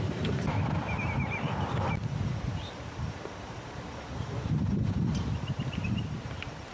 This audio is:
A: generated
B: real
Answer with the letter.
A